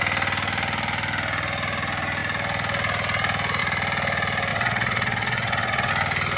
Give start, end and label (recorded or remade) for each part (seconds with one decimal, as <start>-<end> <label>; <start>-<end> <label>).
0.0-4.5 recorded; 4.5-5.9 remade; 5.9-6.4 recorded

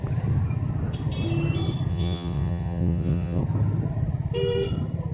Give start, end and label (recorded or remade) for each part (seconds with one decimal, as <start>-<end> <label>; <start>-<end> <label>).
0.0-1.9 recorded; 1.9-3.4 remade; 3.4-5.1 recorded

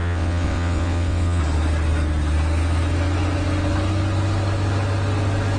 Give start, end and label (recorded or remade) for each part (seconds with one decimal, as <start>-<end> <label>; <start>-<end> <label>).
0.0-1.4 remade; 1.4-5.6 recorded

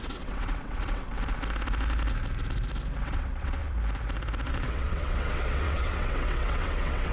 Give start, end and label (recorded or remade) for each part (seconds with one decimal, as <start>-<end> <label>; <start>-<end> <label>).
0.0-1.1 remade; 1.1-3.0 recorded; 3.0-3.6 remade; 3.6-4.5 recorded; 4.5-7.1 remade

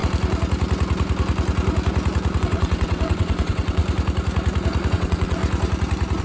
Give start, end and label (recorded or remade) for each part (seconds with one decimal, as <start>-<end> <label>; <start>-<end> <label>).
0.0-2.4 recorded; 2.4-3.8 remade; 3.8-4.9 recorded; 4.9-5.4 remade; 5.4-6.2 recorded